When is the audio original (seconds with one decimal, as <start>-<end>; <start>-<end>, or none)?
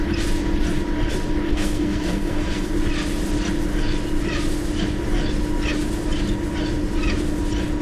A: 0.0-1.5; 2.7-7.8